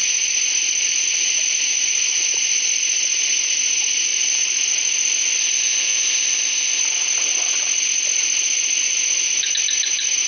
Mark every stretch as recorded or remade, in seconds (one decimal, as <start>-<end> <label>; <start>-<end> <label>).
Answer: 0.0-5.4 recorded; 5.4-6.8 remade; 6.8-10.3 recorded